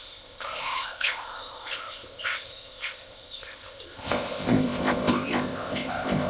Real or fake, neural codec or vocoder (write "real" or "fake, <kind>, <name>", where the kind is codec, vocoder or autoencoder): fake, codec, ZipCodec